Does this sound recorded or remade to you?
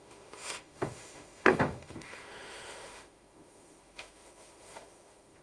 remade